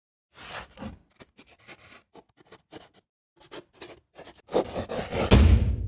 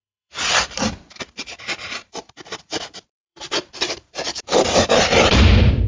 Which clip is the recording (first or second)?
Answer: first